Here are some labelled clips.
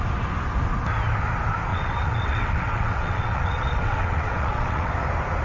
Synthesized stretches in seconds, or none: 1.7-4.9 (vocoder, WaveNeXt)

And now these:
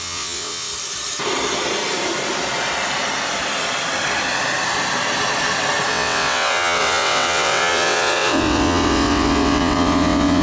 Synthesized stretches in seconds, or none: 0.0-0.7 (vocoder, WaveNeXt); 5.9-10.4

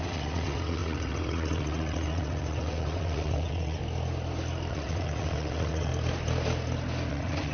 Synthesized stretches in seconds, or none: 0.0-3.8 (vocoder, WaveNeXt); 4.7-5.9; 7.1-7.5

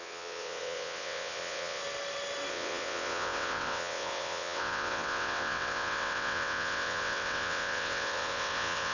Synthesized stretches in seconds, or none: 0.0-1.8 (vocoder, WaveNeXt); 2.5-8.9

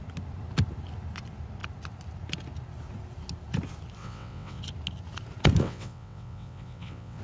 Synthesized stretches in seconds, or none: 4.0-4.6 (vocoder, WaveNeXt); 5.6-7.2